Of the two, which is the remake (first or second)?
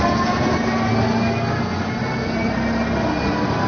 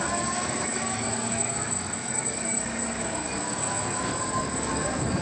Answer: second